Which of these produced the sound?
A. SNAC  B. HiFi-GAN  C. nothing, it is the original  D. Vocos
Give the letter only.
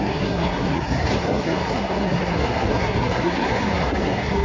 A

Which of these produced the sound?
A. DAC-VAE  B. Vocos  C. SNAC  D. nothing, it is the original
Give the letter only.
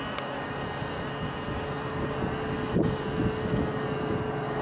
D